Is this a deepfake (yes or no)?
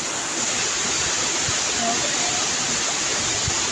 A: no